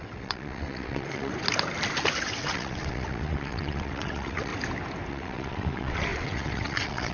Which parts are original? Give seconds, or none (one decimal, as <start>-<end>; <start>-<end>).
1.3-2.2; 4.5-5.1